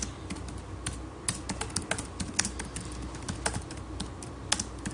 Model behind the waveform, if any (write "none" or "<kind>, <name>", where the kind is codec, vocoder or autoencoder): none